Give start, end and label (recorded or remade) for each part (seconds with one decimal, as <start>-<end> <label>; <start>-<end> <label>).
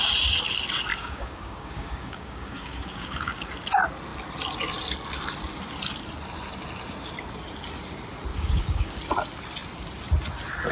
0.0-0.9 recorded; 0.9-3.5 remade; 3.5-8.3 recorded; 8.3-8.9 remade; 8.9-10.7 recorded